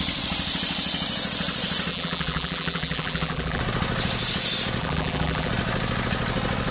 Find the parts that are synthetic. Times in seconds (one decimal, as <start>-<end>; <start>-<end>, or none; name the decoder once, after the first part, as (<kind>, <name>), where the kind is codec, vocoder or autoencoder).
1.9-3.6 (vocoder, BigVGAN v2); 4.8-5.5